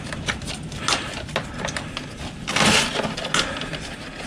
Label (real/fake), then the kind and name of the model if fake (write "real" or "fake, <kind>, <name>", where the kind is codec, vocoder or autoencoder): real